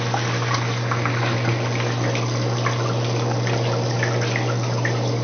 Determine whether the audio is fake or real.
real